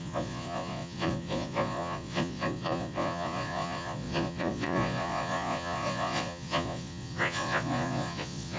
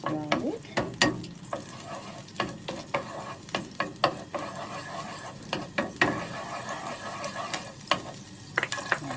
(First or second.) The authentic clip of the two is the second